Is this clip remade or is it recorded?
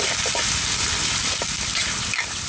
recorded